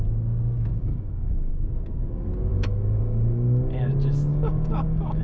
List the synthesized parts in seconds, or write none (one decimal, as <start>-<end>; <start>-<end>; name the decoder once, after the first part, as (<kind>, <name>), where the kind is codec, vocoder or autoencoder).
0.7-1.5 (codec, DAC); 2.5-3.9; 4.3-5.2